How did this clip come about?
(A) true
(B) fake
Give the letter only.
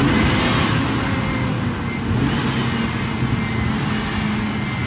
A